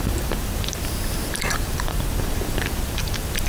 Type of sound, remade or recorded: remade